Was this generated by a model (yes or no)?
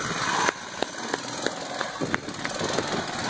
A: no